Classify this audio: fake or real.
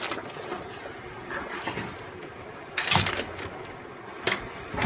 real